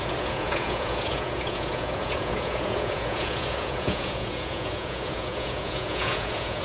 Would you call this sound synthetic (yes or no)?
yes